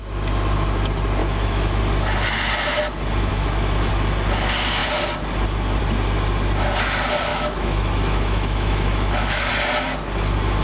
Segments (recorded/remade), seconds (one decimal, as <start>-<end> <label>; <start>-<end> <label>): 0.0-1.2 recorded; 1.2-1.8 remade; 1.8-3.3 recorded; 3.3-3.9 remade; 3.9-7.3 recorded; 7.3-9.5 remade; 9.5-10.6 recorded